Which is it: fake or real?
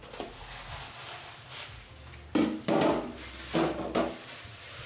real